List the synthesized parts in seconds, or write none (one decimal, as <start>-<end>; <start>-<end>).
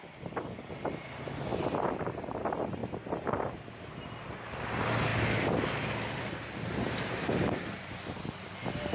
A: 5.1-6.2